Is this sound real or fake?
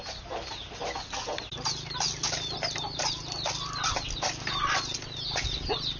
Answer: real